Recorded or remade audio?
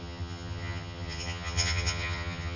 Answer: remade